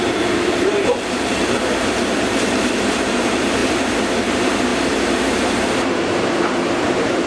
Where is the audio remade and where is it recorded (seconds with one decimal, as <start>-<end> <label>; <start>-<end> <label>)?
0.0-7.3 remade